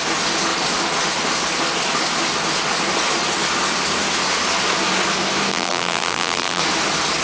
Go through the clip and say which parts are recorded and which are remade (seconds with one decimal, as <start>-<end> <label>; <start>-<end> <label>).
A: 0.0-5.5 recorded; 5.5-6.6 remade; 6.6-7.2 recorded